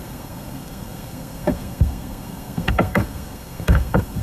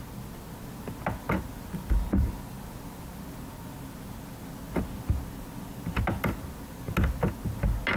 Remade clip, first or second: first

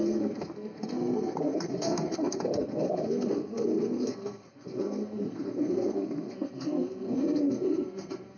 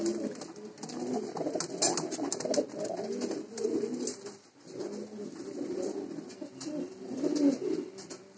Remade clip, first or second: first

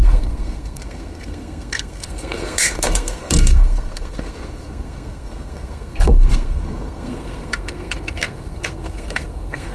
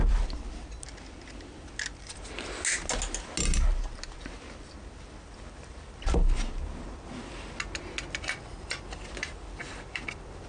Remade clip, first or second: first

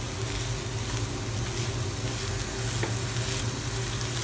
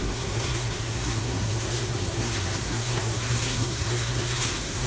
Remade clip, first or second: second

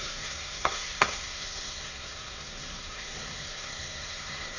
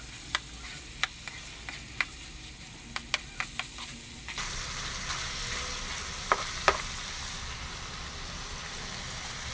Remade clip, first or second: first